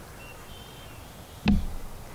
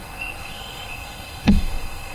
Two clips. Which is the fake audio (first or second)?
second